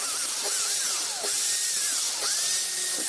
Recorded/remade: recorded